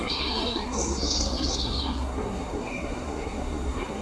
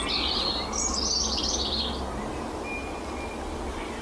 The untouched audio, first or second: second